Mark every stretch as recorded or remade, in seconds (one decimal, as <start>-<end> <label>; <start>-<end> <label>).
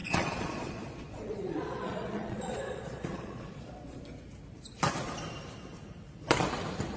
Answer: 0.0-4.0 remade; 4.0-7.0 recorded